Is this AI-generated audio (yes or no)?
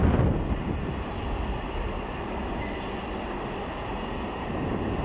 no